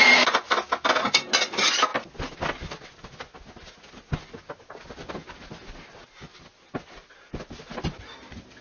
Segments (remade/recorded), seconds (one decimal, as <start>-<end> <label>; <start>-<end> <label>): 0.0-8.6 recorded